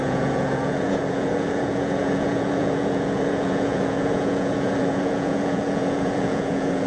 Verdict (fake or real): fake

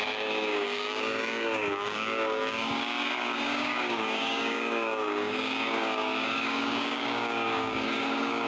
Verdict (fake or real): fake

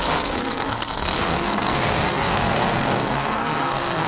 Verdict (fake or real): fake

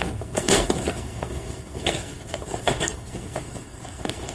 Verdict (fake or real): fake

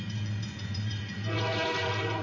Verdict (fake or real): fake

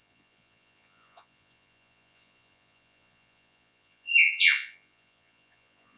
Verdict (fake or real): fake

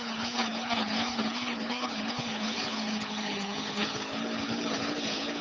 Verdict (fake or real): fake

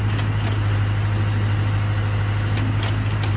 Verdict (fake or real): real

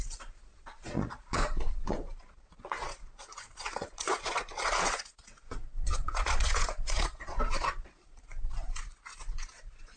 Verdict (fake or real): fake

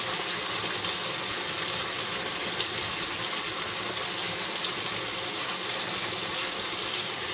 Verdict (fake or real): real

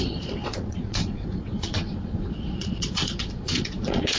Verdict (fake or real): fake